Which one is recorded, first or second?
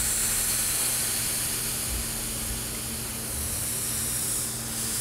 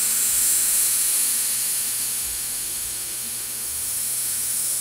first